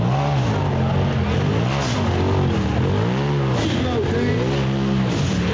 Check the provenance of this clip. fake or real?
real